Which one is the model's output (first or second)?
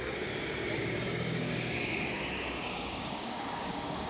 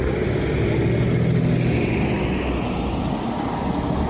first